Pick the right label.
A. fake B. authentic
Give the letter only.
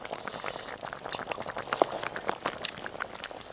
B